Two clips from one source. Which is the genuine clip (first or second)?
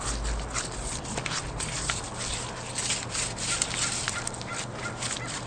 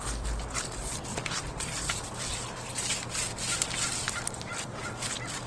first